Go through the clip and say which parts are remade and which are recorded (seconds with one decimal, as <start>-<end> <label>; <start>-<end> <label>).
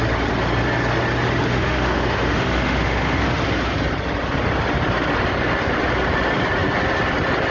0.0-1.5 recorded; 1.5-3.2 remade; 3.2-7.5 recorded